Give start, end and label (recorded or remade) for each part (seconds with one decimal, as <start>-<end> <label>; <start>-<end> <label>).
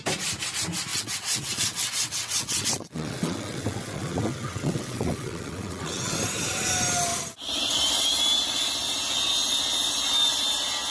0.0-0.9 recorded; 0.9-6.1 remade; 6.1-10.9 recorded